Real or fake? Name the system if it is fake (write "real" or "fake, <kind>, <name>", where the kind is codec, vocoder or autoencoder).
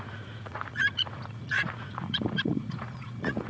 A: fake, vocoder, Vocos